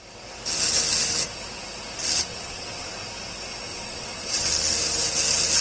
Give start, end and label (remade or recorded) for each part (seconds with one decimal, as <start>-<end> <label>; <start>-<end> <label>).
0.0-2.3 recorded; 2.3-2.9 remade; 2.9-3.7 recorded; 3.7-4.5 remade; 4.5-5.6 recorded